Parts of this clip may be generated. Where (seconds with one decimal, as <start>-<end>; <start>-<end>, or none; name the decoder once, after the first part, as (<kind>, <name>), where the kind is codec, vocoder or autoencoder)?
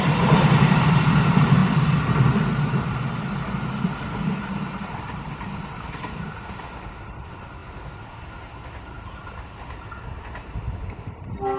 none